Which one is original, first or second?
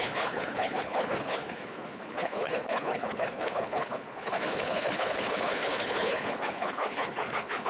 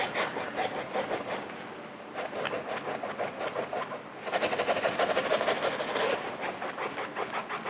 second